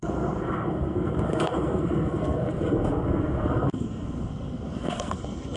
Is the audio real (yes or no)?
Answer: no